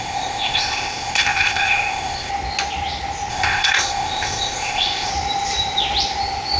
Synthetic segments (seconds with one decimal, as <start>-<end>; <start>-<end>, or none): 0.0-2.3; 3.3-5.1